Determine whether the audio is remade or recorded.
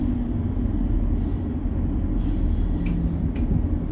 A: recorded